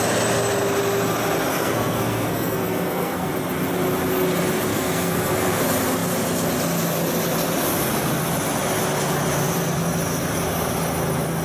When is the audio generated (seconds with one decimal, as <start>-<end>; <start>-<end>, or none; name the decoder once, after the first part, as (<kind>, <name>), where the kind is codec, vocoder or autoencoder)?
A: 1.5-3.3 (codec, SNAC); 4.7-5.6